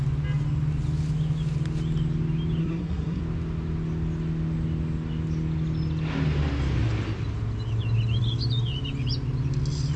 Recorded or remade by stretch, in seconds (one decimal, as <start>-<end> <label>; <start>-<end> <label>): 0.0-2.6 recorded; 2.6-3.2 remade; 3.2-10.0 recorded